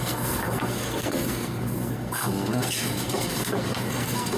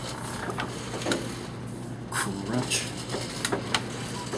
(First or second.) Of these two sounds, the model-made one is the first